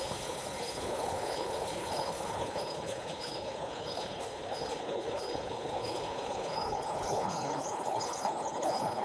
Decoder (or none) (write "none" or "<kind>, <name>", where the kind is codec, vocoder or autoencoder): codec, HILCodec